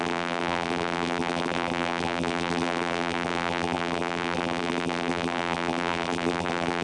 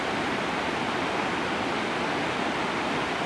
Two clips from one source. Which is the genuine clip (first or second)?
second